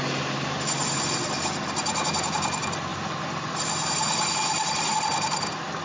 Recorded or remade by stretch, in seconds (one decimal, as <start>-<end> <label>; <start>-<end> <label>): 0.0-5.8 recorded